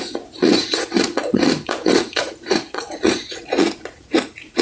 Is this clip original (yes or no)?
no